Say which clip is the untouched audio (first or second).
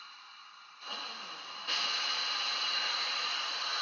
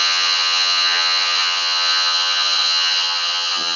first